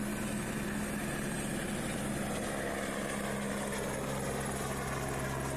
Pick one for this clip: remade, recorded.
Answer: recorded